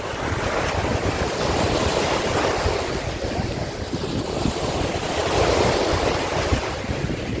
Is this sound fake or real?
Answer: real